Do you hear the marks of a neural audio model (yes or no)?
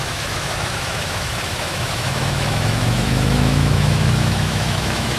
yes